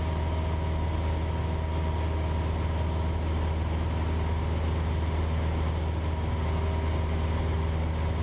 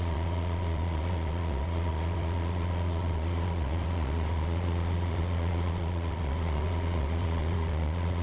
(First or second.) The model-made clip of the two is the second